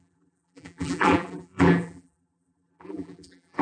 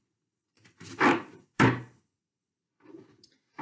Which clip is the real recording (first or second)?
second